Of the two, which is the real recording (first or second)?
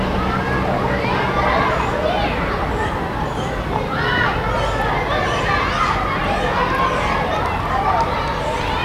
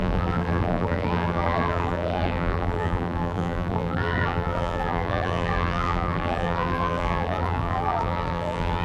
first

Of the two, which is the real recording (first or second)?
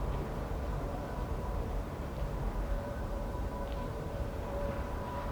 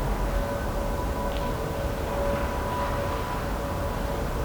second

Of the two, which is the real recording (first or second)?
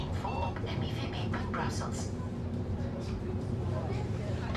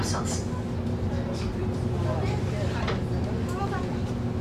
second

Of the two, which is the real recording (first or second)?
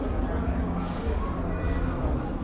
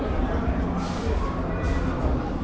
first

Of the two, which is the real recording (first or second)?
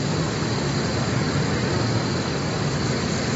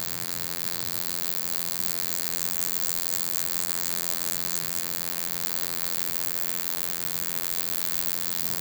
first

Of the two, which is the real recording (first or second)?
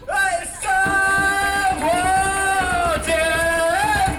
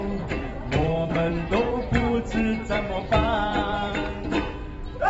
first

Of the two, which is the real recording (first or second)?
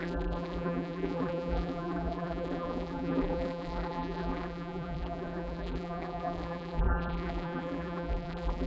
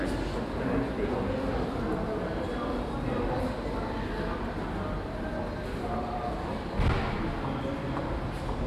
second